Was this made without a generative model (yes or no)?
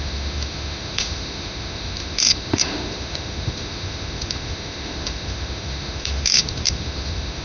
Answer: no